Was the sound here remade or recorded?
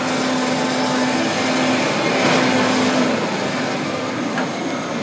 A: recorded